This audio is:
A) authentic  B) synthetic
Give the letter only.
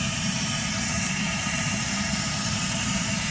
B